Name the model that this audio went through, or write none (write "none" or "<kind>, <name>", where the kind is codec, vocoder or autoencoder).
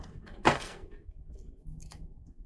codec, SNAC